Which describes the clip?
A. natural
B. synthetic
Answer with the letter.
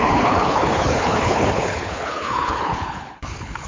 B